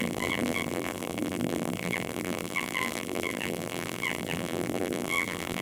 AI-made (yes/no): yes